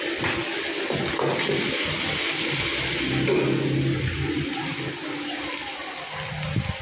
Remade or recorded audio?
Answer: recorded